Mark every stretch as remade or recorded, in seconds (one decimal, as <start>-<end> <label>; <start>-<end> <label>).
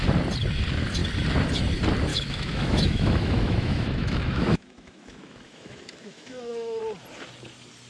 0.0-2.1 recorded; 2.1-6.8 remade; 6.8-7.9 recorded